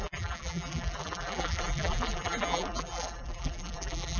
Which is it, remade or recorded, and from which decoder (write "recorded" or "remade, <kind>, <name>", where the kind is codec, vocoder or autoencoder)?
remade, vocoder, BigVGAN v2